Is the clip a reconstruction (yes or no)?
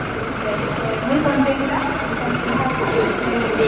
no